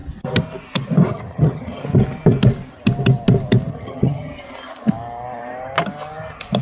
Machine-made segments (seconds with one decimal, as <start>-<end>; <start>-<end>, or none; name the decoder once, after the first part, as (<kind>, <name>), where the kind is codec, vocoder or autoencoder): 1.1-1.8 (vocoder, HiFi-GAN); 3.7-4.3

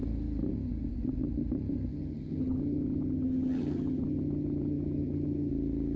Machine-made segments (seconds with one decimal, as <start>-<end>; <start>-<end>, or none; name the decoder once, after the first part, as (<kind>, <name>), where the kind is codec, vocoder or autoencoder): 1.9-5.5 (vocoder, HiFi-GAN)

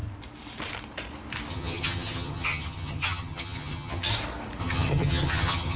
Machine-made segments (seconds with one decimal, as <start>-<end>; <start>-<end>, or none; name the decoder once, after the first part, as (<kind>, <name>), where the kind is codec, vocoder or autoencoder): 1.5-4.1 (vocoder, HiFi-GAN); 4.6-5.8

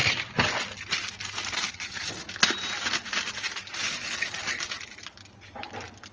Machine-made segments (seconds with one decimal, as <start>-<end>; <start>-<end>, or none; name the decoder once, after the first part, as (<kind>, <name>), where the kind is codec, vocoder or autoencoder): none

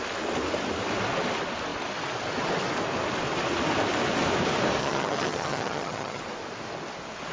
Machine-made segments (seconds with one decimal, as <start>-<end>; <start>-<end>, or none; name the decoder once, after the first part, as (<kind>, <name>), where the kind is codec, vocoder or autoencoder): 4.8-6.2 (vocoder, HiFi-GAN)